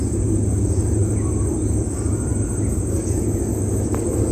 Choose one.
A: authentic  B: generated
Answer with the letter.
A